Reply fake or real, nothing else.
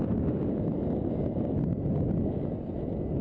real